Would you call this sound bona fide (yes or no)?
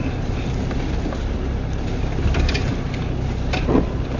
yes